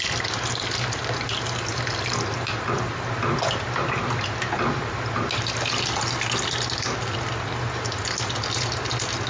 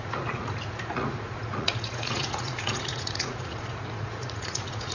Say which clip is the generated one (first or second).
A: second